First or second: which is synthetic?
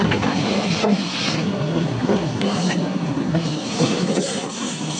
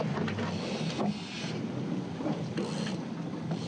first